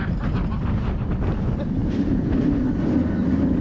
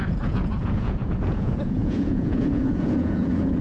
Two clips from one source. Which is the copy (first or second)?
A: second